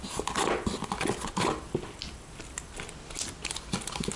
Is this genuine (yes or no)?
yes